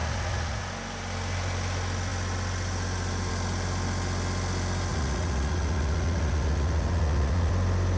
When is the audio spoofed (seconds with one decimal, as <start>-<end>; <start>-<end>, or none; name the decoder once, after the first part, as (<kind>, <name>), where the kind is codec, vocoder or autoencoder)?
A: 0.0-0.6 (vocoder, Vocos); 4.9-7.5